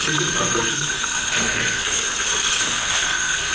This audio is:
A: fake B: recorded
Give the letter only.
A